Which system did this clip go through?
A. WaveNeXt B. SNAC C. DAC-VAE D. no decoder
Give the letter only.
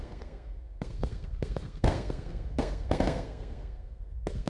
B